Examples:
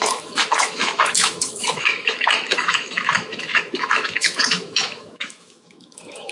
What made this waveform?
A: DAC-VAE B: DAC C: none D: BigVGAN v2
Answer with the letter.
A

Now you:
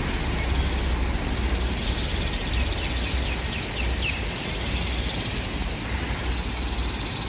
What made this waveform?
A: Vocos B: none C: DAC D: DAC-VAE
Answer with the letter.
B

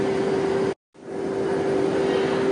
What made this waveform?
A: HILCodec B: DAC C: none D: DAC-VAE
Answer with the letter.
C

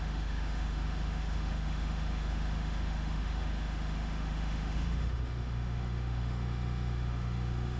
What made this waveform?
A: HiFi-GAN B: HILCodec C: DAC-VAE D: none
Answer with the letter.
C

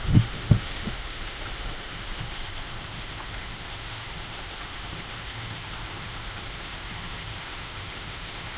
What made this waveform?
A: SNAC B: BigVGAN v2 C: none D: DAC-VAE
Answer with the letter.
D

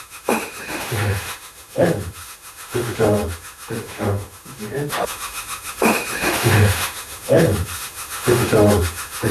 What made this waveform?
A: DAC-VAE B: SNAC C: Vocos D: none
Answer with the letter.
A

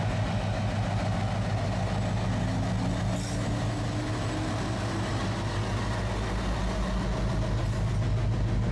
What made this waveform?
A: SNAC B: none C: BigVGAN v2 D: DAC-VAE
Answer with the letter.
B